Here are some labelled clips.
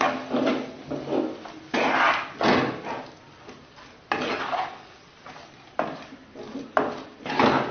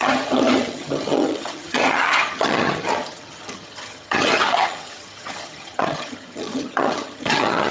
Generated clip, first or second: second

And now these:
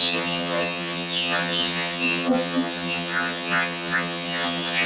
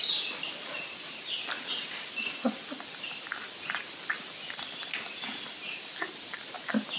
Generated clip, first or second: first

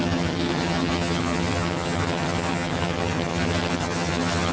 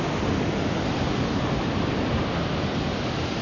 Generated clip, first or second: first